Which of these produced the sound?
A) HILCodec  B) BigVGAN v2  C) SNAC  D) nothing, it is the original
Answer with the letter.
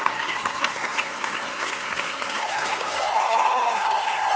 C